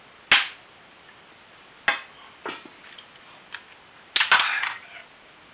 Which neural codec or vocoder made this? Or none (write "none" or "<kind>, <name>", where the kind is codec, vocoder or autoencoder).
none